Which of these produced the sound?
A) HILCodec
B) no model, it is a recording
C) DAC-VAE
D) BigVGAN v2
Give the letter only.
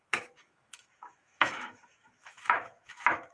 C